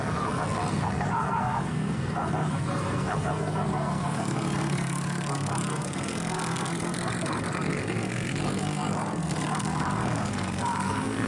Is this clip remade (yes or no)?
yes